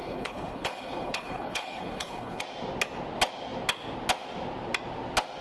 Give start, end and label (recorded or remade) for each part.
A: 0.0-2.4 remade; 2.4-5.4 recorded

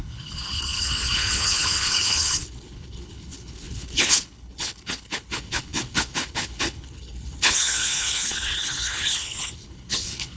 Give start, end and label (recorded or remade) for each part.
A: 0.0-10.4 remade

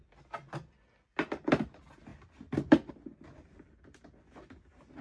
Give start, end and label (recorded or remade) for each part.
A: 0.0-5.0 recorded

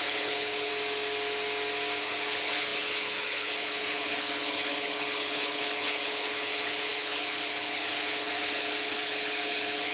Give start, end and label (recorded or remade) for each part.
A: 0.0-0.7 remade; 0.7-2.0 recorded; 2.0-9.9 remade

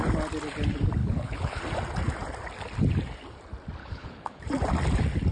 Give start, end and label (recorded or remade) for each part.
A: 0.0-1.0 recorded; 1.0-1.6 remade; 1.6-3.8 recorded; 3.8-4.4 remade; 4.4-5.3 recorded

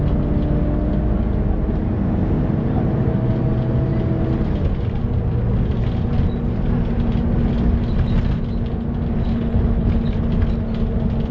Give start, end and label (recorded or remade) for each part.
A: 0.0-9.3 recorded; 9.3-9.9 remade; 9.9-11.3 recorded

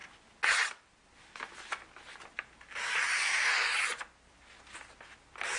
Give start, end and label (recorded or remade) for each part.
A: 0.0-5.6 recorded